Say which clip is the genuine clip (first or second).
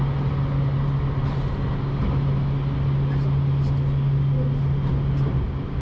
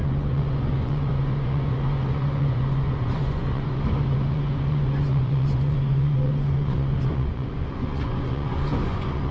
first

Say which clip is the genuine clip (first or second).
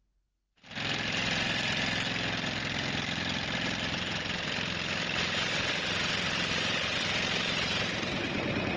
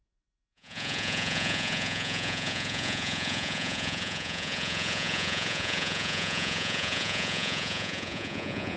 first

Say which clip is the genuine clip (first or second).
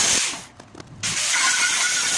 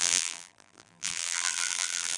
first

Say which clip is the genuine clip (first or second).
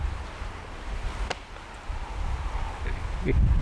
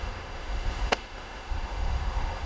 first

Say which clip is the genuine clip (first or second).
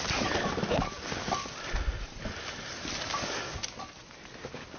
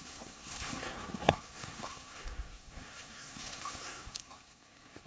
first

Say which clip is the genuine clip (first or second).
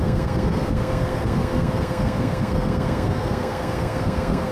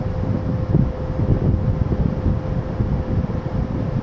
second